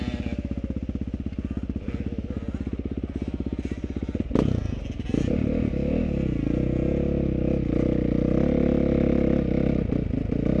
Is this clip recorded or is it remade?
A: recorded